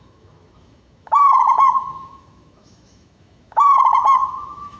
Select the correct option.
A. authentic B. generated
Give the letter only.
B